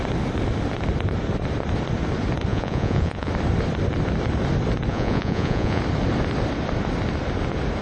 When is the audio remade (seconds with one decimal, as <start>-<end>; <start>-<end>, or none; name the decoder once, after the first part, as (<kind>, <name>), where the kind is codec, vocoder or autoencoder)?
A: 2.5-3.3 (vocoder, Vocos); 4.9-5.8